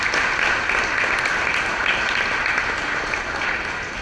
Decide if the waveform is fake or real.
real